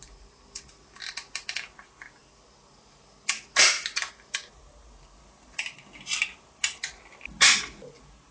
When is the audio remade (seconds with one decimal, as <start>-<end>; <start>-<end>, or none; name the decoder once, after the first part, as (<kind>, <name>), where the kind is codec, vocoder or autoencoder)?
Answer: none